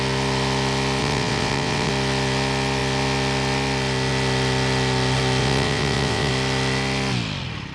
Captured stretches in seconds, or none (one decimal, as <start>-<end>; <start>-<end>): 0.0-1.0; 1.9-5.4; 6.3-7.7